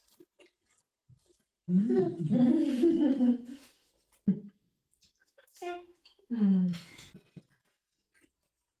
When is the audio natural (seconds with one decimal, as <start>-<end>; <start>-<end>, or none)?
0.0-2.7; 3.9-5.2; 7.1-8.8